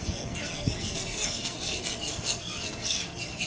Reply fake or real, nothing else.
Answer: fake